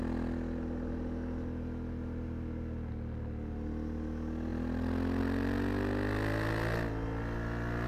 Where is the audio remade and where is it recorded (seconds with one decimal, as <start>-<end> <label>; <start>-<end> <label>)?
0.0-7.9 recorded